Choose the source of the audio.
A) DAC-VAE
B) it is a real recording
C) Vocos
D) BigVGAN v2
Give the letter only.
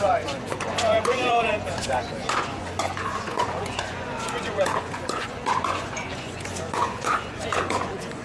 C